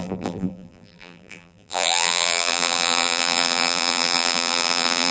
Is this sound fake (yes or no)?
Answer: yes